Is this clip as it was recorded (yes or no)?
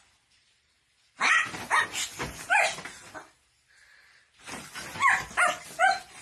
yes